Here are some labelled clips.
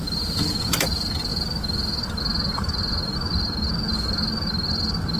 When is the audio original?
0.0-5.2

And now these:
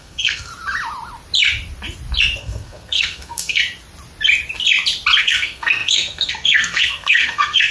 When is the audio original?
0.5-2.4; 3.6-5.2

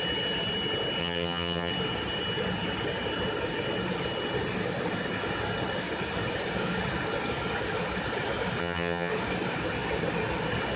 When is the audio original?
0.0-1.0; 1.7-8.6; 9.1-10.8

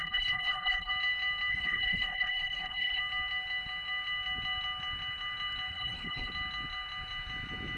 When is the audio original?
0.9-1.5; 3.0-5.7; 6.3-7.8

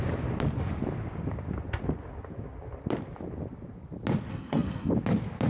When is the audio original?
0.0-4.3; 4.9-5.5

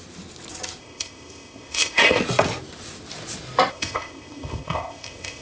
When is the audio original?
0.0-0.8; 2.2-3.7

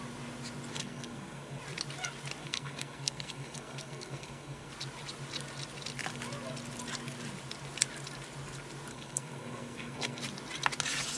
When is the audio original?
0.0-0.7; 1.6-2.4; 4.7-8.9; 10.2-11.2